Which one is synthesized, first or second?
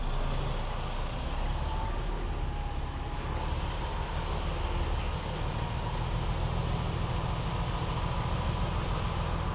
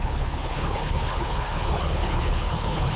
second